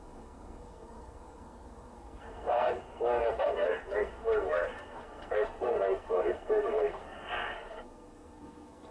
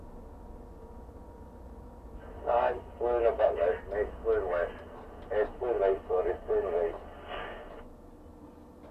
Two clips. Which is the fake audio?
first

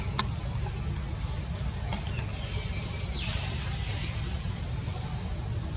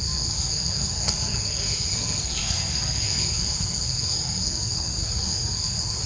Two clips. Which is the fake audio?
second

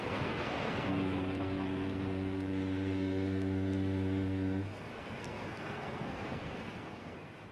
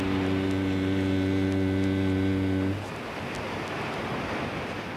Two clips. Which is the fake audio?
first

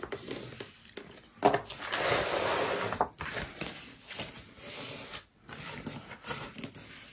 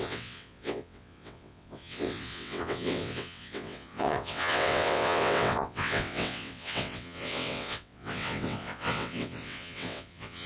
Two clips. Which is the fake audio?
second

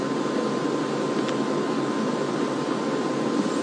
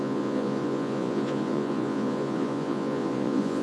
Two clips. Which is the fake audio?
second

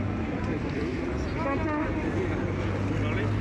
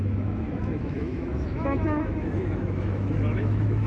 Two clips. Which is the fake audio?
second